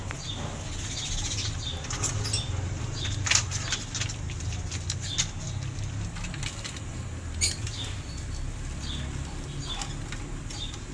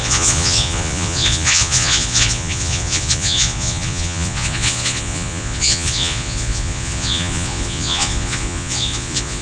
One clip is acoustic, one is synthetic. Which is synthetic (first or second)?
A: second